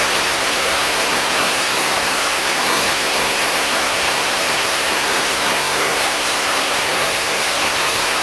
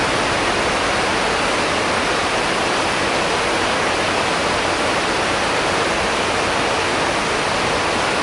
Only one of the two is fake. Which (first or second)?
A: first